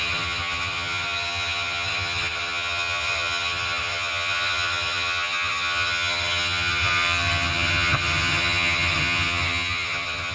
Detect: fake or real fake